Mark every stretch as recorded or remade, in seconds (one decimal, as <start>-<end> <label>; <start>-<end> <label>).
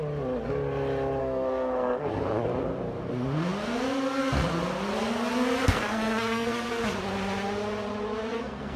0.0-1.2 recorded; 1.2-2.1 remade; 2.1-5.6 recorded; 5.6-6.8 remade; 6.8-8.3 recorded; 8.3-8.8 remade